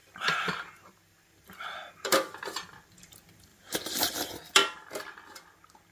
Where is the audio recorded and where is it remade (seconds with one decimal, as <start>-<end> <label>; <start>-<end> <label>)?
0.0-3.5 recorded; 3.5-4.1 remade; 4.1-5.9 recorded